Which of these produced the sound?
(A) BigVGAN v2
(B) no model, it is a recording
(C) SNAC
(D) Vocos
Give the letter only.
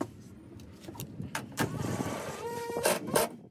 A